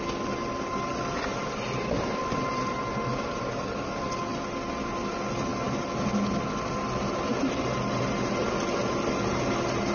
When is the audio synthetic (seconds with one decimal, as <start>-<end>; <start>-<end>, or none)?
none

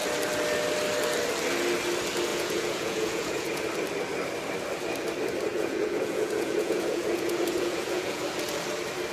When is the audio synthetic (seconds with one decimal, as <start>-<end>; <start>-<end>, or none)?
2.3-3.6; 5.5-8.2

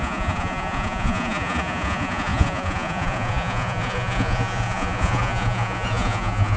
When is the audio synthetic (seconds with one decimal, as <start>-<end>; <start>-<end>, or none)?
0.0-6.6

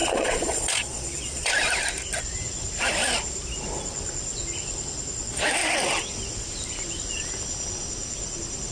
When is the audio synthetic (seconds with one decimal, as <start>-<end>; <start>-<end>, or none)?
0.0-1.5

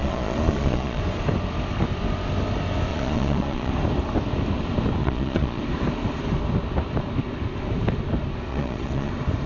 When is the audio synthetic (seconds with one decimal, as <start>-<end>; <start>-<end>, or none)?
0.0-1.0; 2.9-3.7; 5.0-5.6; 8.5-9.1

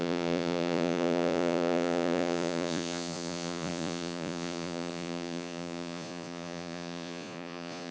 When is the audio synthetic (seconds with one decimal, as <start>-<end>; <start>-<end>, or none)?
0.0-7.9

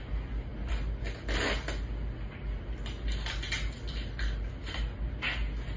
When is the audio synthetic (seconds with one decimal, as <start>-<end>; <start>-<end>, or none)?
none